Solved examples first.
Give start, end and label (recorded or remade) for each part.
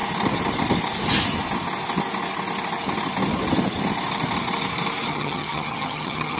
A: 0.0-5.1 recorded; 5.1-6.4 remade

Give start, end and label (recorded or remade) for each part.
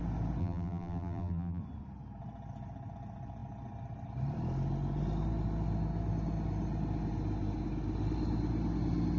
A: 0.0-0.4 recorded; 0.4-1.6 remade; 1.6-9.2 recorded